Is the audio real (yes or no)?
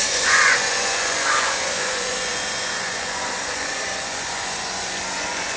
no